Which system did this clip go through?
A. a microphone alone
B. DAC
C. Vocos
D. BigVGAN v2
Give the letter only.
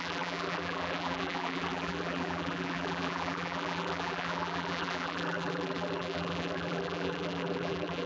D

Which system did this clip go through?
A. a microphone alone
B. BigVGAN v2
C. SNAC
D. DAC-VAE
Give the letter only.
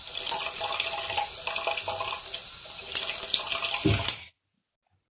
A